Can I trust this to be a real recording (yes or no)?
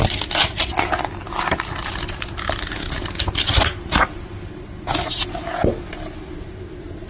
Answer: yes